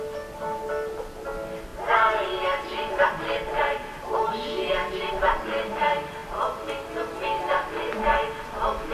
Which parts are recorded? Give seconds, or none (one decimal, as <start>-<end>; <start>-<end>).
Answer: 0.0-8.9